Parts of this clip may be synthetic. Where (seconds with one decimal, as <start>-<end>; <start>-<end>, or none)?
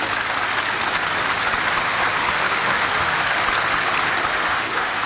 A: 2.2-3.4; 4.3-5.1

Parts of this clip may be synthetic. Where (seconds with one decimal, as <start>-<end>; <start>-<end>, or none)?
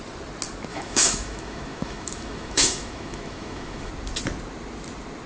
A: 0.7-3.9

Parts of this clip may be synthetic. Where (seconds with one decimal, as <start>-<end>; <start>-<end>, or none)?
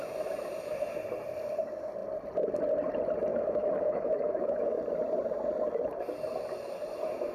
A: 3.3-4.8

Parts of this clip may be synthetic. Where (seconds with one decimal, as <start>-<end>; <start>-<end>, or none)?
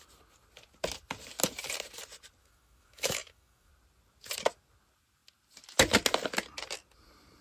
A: 2.4-3.7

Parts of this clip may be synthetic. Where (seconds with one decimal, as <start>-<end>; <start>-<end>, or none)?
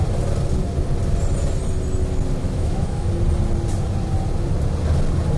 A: 2.4-3.1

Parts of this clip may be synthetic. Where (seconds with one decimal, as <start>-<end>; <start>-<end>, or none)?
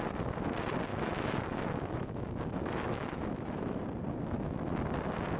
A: 0.9-3.8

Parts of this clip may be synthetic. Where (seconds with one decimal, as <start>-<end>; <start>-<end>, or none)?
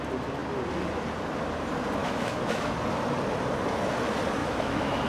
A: 2.0-2.7; 4.4-5.1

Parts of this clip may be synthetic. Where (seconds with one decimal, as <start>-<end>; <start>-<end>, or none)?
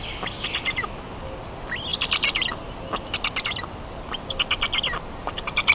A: none